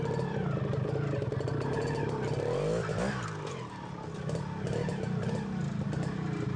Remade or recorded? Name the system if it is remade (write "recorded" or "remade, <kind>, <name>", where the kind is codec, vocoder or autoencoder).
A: recorded